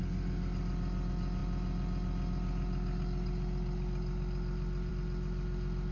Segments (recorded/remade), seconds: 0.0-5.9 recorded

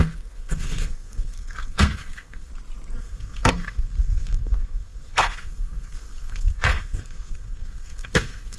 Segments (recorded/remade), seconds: 0.0-2.5 remade; 2.5-3.0 recorded; 3.0-8.6 remade

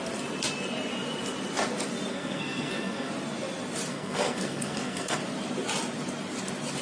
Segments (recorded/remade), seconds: 0.0-2.1 recorded; 2.1-3.1 remade; 3.1-3.9 recorded; 3.9-5.2 remade; 5.2-6.8 recorded

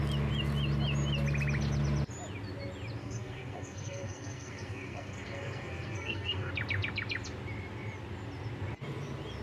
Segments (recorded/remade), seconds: 0.0-3.0 recorded; 3.0-6.5 remade; 6.5-9.4 recorded

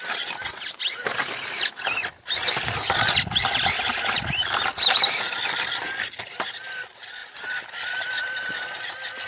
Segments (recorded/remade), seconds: 0.0-9.3 recorded

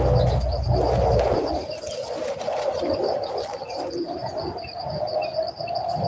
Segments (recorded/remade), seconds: 0.0-6.1 recorded

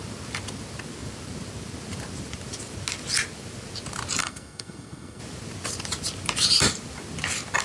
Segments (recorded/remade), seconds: 0.0-4.2 recorded; 4.2-5.2 remade; 5.2-7.6 recorded

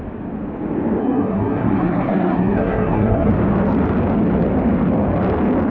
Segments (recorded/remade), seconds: 0.0-1.0 recorded; 1.0-3.3 remade; 3.3-5.7 recorded